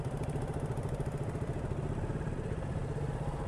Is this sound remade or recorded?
recorded